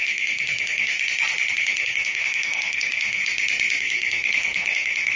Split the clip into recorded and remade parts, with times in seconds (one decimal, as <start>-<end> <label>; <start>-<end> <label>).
0.0-0.9 remade; 0.9-1.5 recorded; 1.5-3.2 remade; 3.2-3.8 recorded; 3.8-5.2 remade